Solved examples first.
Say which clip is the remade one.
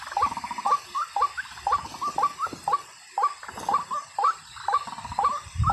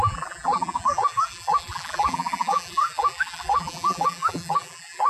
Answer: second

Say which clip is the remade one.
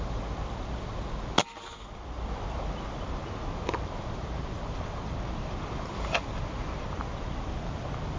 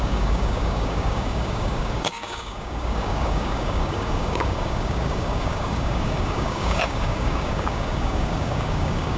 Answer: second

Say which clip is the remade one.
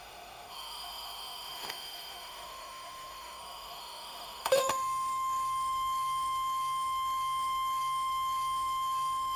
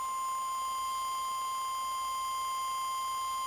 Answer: first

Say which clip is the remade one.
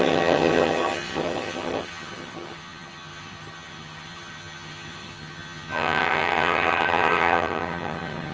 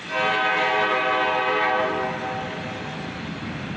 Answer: first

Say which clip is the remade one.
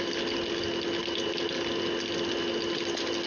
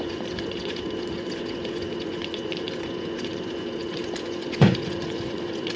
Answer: second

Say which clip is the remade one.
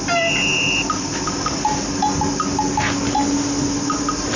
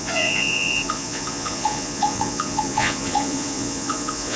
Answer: second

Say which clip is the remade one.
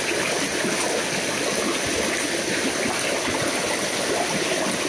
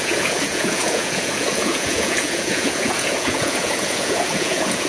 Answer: second